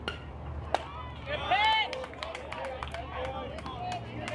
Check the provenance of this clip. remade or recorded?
recorded